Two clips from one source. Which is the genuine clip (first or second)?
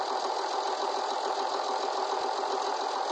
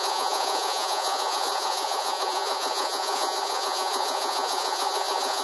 first